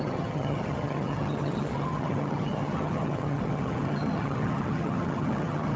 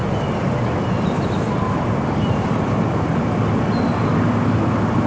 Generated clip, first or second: first